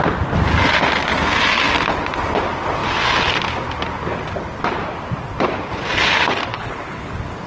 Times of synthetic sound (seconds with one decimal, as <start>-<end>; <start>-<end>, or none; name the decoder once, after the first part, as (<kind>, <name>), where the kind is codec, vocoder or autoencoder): 6.5-7.1 (codec, HILCodec)